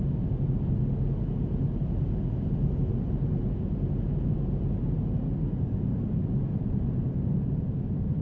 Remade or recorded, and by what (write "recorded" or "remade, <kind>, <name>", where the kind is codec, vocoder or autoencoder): recorded